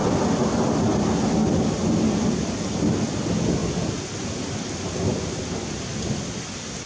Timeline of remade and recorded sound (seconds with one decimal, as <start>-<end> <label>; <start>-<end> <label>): 0.0-2.8 remade; 2.8-6.9 recorded